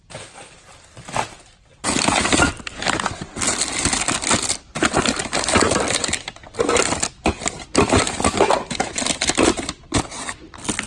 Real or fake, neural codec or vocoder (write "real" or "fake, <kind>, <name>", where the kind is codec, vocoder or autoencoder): real